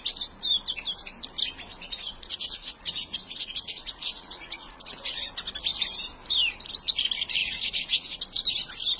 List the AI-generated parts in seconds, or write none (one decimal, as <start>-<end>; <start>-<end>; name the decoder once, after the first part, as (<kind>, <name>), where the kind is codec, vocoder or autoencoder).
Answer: 1.7-5.2 (vocoder, Vocos); 7.4-8.2